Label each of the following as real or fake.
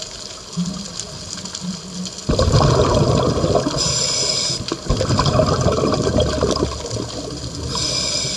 real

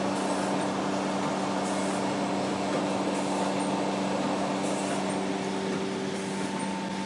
real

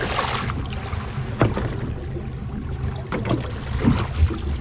real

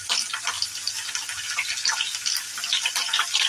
real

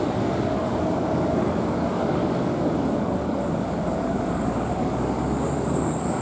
fake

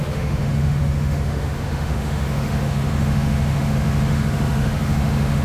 fake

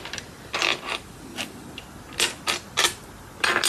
real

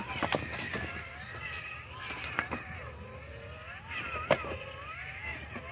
real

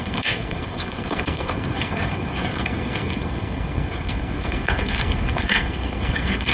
fake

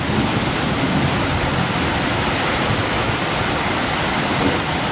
real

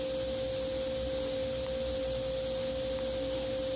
real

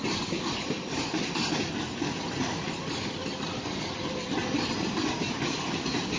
real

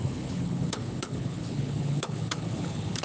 fake